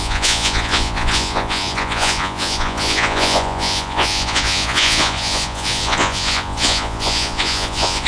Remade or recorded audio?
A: remade